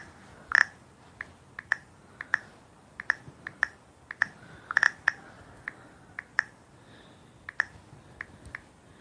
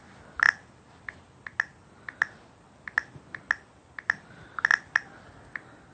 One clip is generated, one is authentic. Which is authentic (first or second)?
second